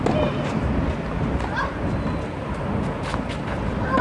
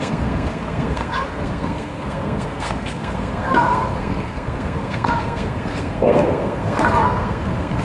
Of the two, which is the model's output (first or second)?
second